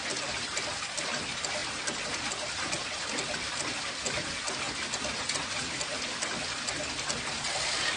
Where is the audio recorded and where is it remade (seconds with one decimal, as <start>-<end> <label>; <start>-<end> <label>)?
0.0-8.0 recorded